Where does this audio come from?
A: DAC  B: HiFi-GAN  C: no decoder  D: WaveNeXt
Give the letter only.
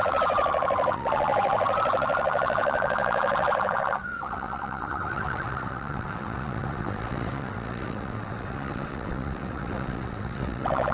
D